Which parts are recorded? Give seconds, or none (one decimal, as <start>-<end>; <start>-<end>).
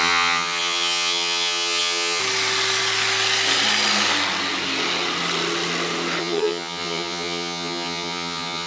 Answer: 2.2-6.2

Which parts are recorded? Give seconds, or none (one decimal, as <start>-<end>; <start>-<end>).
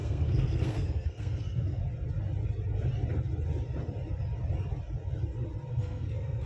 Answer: 1.8-5.7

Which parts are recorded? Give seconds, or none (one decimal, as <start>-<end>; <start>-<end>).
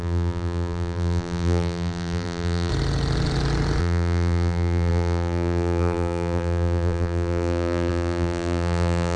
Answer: 2.7-3.8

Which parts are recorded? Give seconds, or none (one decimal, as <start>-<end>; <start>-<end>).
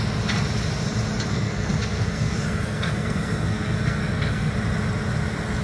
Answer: 0.0-1.3; 4.5-5.6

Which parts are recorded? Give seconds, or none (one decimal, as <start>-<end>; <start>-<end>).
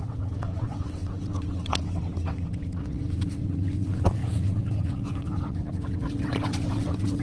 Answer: none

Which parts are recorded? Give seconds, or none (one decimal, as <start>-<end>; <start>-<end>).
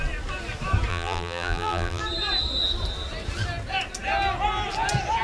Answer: 0.0-0.9; 2.0-5.2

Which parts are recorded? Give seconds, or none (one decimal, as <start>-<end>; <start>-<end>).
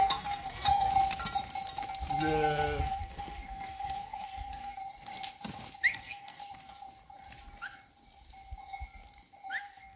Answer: 0.9-2.8; 4.8-5.9; 6.4-9.6